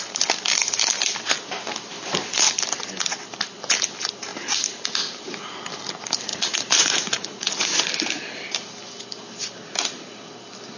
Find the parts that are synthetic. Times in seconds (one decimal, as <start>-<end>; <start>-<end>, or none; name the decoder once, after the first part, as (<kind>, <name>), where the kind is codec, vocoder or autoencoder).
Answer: 6.3-7.9 (vocoder, Vocos)